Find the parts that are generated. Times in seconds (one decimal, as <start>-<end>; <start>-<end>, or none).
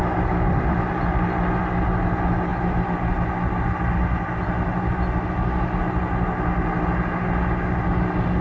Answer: 0.0-1.6